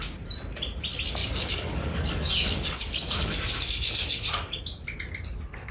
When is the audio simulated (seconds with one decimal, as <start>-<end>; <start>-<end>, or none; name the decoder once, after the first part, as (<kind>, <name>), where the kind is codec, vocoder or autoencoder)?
1.2-4.6 (codec, DAC)